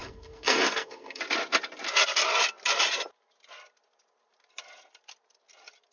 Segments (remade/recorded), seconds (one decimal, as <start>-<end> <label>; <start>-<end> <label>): 0.0-1.2 remade; 1.2-5.9 recorded